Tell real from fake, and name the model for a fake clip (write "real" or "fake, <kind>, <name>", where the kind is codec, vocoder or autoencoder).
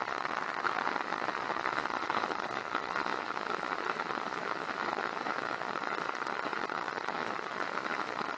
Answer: fake, vocoder, Vocos